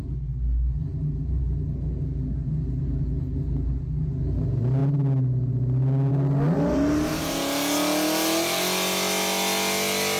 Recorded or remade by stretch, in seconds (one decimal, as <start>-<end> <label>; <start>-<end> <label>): 0.0-0.9 recorded; 0.9-1.4 remade; 1.4-10.2 recorded